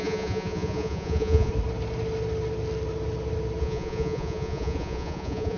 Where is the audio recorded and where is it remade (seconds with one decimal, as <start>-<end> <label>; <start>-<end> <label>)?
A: 0.0-1.5 remade; 1.5-3.6 recorded; 3.6-5.6 remade